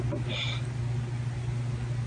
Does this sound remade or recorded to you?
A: recorded